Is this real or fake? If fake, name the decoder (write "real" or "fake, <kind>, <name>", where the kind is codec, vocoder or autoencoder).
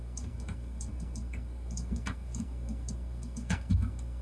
fake, codec, SNAC